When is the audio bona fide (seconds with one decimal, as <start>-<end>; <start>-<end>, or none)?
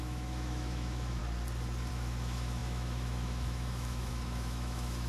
1.2-1.9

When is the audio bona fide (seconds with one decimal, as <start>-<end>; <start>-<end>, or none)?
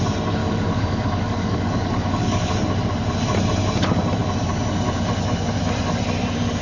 0.0-0.4; 2.5-6.6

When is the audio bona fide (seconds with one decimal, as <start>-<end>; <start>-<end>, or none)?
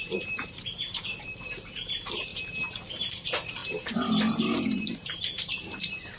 2.3-3.0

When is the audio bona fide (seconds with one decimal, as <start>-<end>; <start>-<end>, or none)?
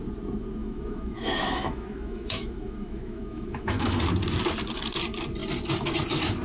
0.0-0.6; 4.0-6.4